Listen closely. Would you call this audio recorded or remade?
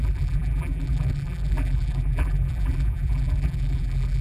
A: remade